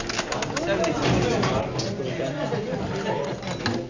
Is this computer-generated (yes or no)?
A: no